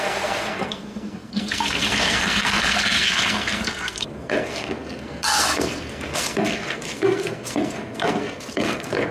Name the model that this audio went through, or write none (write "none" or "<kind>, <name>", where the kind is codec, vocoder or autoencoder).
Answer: codec, SNAC